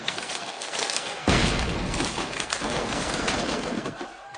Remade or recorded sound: remade